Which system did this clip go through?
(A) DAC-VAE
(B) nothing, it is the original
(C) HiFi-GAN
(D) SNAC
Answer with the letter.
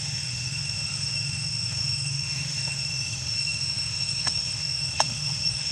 A